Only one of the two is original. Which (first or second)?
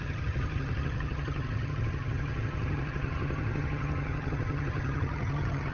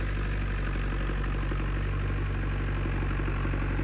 second